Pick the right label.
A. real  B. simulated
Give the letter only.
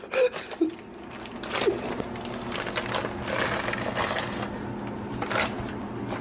A